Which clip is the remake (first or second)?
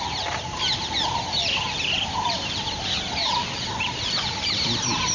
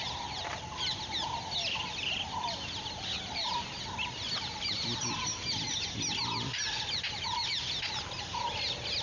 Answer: first